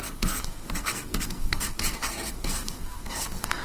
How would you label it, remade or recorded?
remade